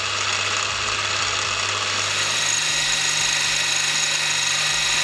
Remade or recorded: recorded